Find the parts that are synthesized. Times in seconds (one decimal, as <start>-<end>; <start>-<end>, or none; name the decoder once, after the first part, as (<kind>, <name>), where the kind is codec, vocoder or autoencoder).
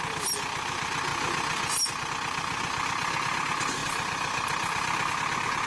none